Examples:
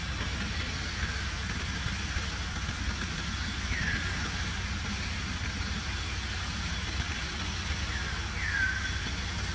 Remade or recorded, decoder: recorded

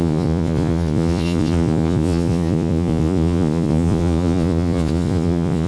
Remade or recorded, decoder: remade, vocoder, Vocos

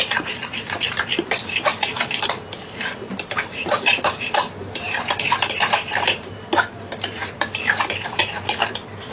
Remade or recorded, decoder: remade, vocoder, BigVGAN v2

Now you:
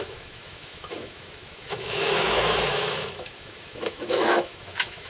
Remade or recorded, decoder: remade, autoencoder, DAC-VAE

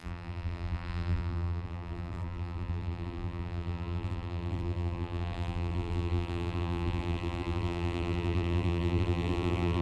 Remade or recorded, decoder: remade, vocoder, BigVGAN v2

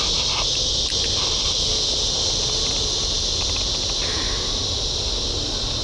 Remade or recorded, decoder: recorded